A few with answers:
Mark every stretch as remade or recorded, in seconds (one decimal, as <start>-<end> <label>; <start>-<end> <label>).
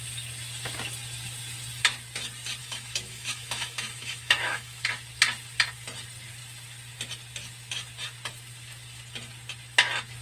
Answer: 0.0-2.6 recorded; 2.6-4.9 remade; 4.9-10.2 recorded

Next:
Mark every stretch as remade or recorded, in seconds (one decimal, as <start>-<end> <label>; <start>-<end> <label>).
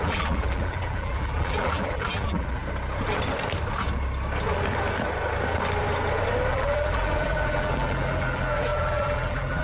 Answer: 0.0-2.6 remade; 2.6-6.5 recorded; 6.5-9.6 remade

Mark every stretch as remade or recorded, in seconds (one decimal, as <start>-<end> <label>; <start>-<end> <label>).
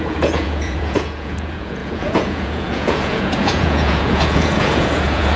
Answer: 0.0-5.4 remade